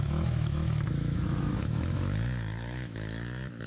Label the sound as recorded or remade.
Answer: remade